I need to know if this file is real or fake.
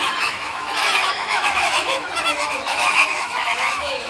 fake